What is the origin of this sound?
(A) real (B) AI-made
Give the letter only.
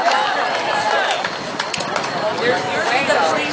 A